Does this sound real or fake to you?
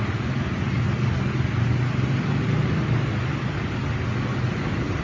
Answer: real